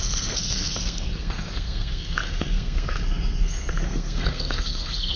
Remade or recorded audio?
remade